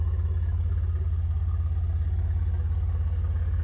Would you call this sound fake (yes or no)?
no